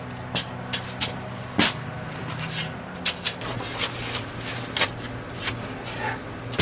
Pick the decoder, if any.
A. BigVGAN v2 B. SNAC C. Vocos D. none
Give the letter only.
A